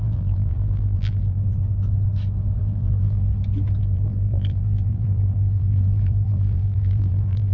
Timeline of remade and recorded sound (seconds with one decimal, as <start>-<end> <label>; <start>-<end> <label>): 0.0-1.4 remade; 1.4-2.6 recorded; 2.6-3.3 remade; 3.3-3.8 recorded; 3.8-7.5 remade